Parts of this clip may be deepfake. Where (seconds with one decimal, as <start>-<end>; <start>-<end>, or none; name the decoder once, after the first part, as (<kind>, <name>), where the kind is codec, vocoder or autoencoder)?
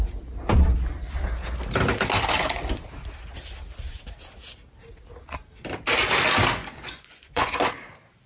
6.6-7.7 (vocoder, Vocos)